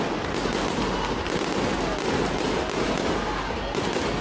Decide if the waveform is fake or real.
real